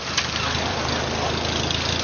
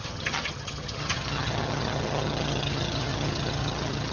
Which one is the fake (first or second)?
second